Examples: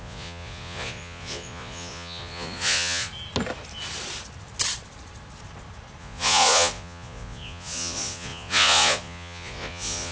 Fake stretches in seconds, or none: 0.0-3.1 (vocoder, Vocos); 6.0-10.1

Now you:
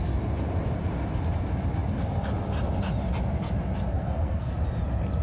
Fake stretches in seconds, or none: 3.9-4.5 (codec, SNAC)

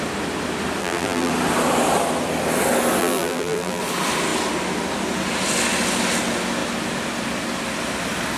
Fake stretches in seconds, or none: 0.8-1.3 (vocoder, BigVGAN v2); 3.0-3.8

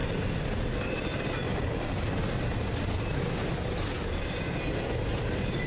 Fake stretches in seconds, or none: none

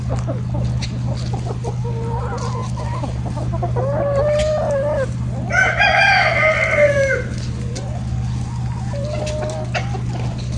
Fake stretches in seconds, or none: none